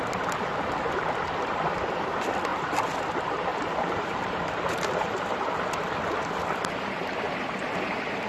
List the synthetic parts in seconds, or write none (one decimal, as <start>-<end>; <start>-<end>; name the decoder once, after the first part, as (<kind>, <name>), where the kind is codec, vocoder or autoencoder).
3.5-5.5 (vocoder, BigVGAN v2)